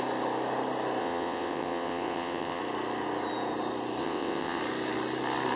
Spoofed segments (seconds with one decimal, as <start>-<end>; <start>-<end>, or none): 1.0-2.6; 4.0-4.6